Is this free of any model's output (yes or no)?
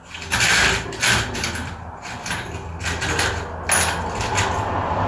yes